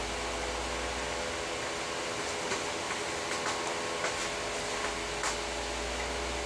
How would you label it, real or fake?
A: real